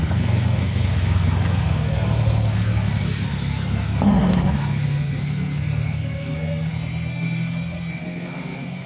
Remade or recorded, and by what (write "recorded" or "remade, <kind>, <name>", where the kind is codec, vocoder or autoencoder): remade, codec, SNAC